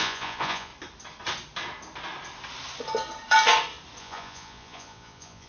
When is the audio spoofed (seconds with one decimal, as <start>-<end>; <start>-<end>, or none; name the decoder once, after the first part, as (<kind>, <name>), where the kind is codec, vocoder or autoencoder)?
0.0-0.7 (vocoder, Vocos); 4.0-5.5